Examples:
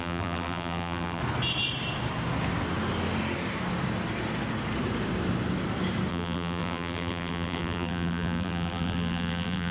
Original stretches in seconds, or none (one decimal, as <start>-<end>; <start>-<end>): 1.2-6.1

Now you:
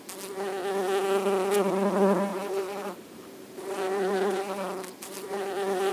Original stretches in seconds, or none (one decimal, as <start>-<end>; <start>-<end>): 0.0-2.3

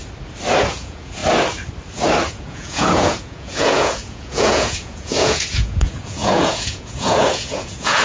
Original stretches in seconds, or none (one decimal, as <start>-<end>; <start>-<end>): 0.0-0.6; 1.2-2.3

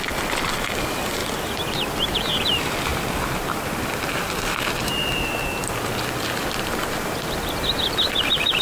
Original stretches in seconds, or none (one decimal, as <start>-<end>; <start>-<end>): 1.2-2.4

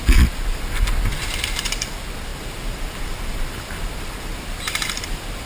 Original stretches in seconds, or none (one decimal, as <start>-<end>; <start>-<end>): 0.0-1.1; 1.9-2.3

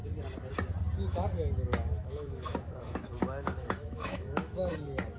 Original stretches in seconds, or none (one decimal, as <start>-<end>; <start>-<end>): 0.0-1.7; 4.7-5.2